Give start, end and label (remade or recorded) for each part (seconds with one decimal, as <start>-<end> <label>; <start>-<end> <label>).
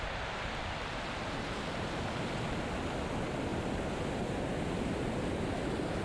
0.0-6.0 recorded